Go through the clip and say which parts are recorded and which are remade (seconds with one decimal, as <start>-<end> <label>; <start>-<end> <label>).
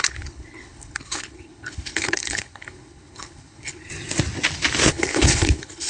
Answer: 0.0-3.9 remade; 3.9-4.9 recorded; 4.9-5.9 remade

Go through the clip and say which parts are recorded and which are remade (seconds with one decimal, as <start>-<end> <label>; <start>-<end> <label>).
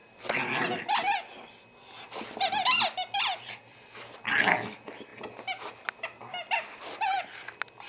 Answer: 0.0-7.9 recorded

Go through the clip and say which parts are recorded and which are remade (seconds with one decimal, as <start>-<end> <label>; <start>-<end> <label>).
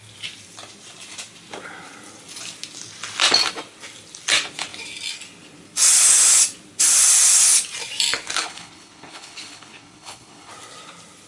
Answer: 0.0-8.4 recorded; 8.4-10.5 remade; 10.5-11.3 recorded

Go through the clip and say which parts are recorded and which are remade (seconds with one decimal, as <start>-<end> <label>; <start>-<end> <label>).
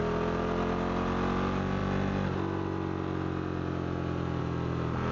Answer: 0.0-5.1 recorded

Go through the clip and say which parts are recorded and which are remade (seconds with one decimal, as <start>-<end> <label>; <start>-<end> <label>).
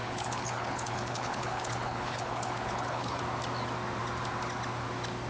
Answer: 0.0-3.2 remade; 3.2-5.3 recorded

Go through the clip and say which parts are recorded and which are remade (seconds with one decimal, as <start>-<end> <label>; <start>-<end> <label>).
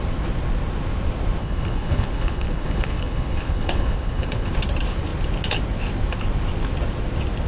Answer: 0.0-1.4 recorded; 1.4-4.5 remade; 4.5-7.5 recorded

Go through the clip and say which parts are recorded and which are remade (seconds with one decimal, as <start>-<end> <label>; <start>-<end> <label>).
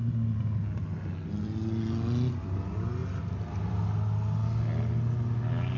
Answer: 0.0-5.8 recorded